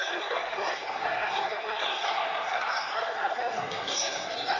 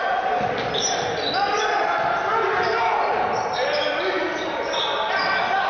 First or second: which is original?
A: second